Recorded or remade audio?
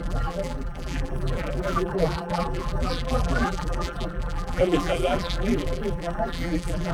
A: remade